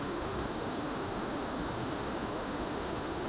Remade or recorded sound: remade